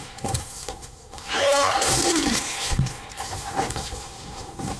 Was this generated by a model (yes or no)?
yes